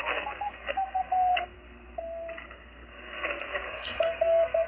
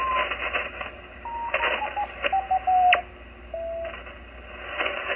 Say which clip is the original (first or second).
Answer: second